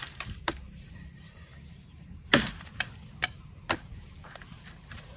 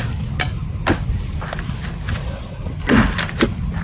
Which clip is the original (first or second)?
second